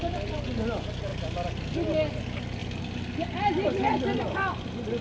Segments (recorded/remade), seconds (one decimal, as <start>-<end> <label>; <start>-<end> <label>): 0.0-5.0 recorded